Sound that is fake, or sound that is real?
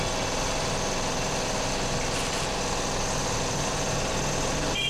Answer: real